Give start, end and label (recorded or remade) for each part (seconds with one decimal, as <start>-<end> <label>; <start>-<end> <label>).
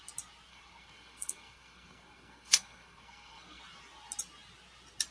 0.0-0.5 recorded; 0.5-3.6 remade; 3.6-5.1 recorded